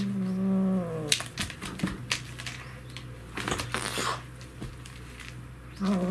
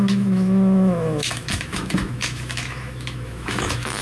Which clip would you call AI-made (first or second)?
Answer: second